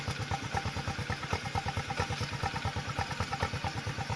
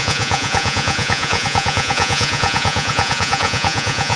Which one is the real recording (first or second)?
first